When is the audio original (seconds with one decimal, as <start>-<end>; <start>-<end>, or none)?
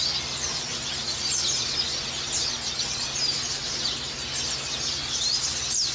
0.0-5.9